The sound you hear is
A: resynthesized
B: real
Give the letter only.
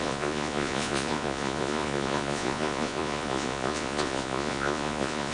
A